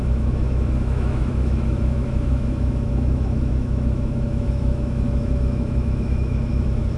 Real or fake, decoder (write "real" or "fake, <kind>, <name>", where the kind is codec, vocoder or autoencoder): fake, autoencoder, DAC-VAE